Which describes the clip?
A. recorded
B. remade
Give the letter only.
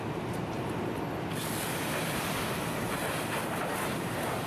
A